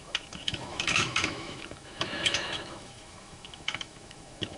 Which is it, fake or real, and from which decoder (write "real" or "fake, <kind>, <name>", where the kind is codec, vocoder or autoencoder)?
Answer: fake, autoencoder, DAC-VAE